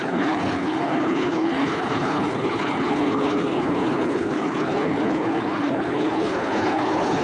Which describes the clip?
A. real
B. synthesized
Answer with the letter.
B